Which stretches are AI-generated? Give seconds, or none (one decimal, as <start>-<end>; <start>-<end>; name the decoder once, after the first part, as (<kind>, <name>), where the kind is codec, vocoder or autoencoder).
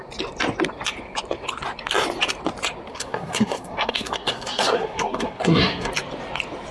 2.9-5.9 (codec, SNAC)